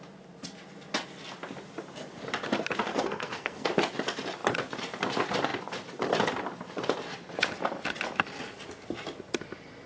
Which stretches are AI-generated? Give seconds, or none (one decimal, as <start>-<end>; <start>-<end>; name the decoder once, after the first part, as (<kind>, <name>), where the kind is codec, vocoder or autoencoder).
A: 2.9-3.7 (codec, SNAC)